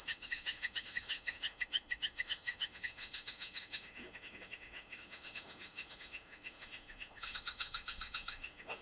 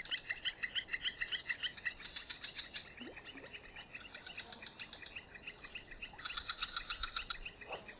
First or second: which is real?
second